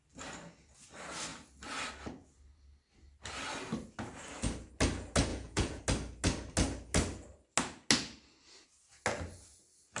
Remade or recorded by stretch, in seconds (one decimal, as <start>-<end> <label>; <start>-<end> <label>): 0.0-5.3 recorded; 5.3-5.8 remade; 5.8-10.0 recorded